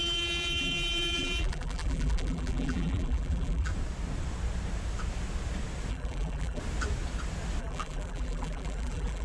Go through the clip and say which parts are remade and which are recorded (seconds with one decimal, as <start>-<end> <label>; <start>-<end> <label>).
0.0-3.7 remade; 3.7-5.9 recorded; 5.9-6.6 remade; 6.6-7.6 recorded; 7.6-9.2 remade